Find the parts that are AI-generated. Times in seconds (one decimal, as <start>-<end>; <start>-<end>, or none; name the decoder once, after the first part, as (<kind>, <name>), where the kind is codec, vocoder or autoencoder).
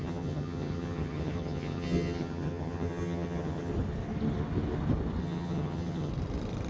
0.0-3.7 (vocoder, HiFi-GAN); 5.2-6.1